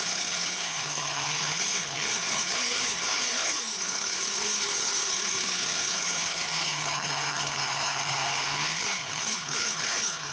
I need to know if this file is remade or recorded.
remade